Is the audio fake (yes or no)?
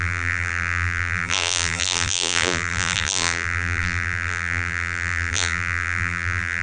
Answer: yes